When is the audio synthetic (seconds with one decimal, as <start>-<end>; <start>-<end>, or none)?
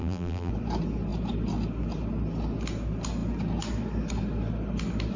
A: 0.0-0.5